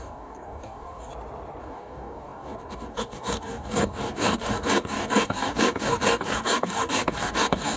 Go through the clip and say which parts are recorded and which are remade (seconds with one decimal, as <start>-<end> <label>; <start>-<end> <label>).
0.0-1.1 remade; 1.1-1.6 recorded; 1.6-7.8 remade